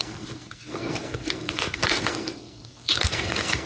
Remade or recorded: remade